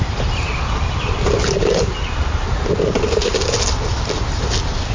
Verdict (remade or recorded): recorded